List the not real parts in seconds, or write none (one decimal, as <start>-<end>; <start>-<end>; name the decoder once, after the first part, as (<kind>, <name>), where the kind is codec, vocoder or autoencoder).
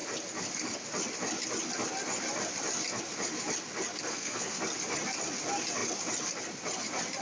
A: 4.1-4.6 (codec, SNAC)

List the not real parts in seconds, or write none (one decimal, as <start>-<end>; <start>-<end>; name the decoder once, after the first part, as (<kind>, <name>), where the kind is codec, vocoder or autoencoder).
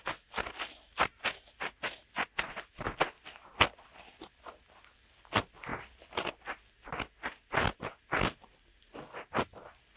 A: none